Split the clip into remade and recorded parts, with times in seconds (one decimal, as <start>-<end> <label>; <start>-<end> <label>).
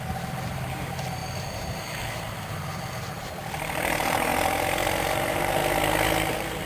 0.0-4.3 remade; 4.3-5.0 recorded; 5.0-5.6 remade; 5.6-6.3 recorded; 6.3-6.7 remade